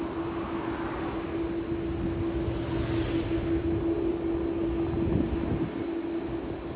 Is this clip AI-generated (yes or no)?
no